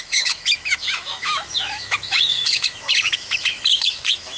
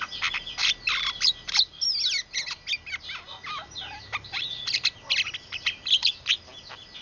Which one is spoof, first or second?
first